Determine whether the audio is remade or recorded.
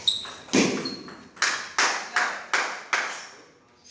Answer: recorded